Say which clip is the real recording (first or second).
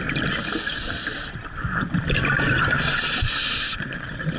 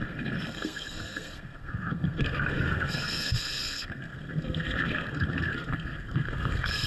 first